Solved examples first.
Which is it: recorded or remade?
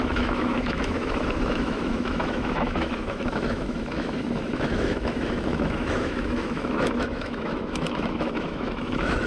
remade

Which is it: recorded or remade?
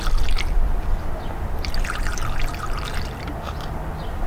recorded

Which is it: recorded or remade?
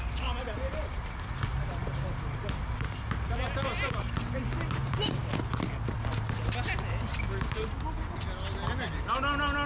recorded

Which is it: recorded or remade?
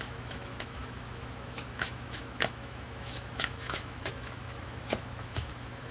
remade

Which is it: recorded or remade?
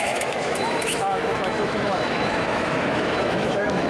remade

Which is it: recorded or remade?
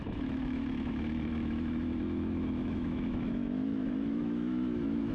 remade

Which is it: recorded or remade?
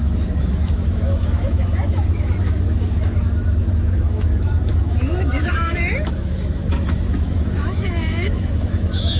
remade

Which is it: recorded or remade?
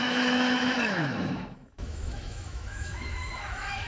remade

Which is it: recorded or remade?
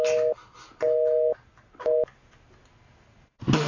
recorded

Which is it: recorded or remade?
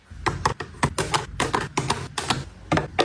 recorded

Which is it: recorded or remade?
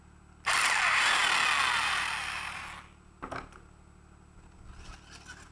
recorded